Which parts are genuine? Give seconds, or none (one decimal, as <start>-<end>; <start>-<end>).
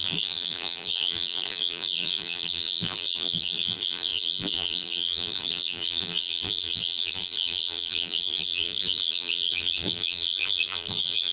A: none